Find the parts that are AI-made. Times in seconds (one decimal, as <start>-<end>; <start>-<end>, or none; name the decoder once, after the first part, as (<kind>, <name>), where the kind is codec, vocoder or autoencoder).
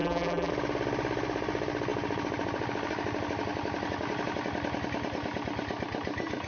0.0-0.5 (vocoder, BigVGAN v2)